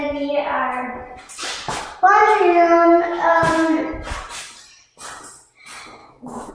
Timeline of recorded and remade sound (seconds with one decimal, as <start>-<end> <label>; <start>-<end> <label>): 0.0-2.4 recorded; 2.4-3.8 remade; 3.8-6.0 recorded; 6.0-6.5 remade